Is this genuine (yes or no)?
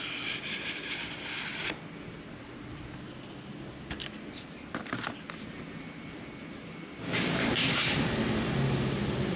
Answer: yes